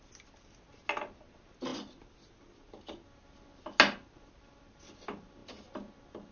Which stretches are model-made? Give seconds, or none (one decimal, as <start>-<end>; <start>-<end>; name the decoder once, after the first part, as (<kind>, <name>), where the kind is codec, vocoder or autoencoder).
none